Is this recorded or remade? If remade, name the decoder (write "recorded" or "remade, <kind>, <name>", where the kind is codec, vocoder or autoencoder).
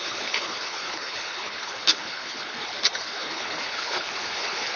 remade, codec, HILCodec